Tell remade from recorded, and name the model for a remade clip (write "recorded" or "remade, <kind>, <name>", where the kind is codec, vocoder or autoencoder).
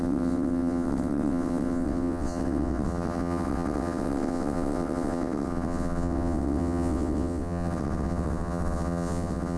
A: remade, vocoder, WaveNeXt